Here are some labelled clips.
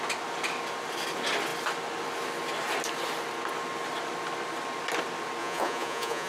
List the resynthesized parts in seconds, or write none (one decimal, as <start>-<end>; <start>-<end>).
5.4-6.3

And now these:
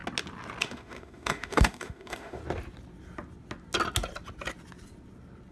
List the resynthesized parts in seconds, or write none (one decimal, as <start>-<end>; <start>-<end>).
0.6-2.4

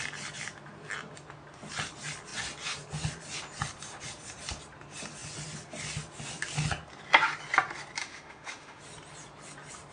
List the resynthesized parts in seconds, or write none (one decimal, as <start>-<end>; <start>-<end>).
8.0-8.8